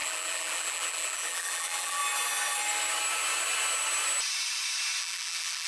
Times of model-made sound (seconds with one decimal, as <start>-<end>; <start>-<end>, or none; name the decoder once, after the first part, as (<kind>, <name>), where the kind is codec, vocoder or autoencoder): 0.0-2.0 (vocoder, BigVGAN v2); 5.0-5.7